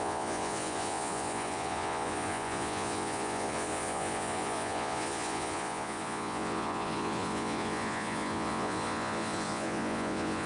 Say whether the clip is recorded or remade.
remade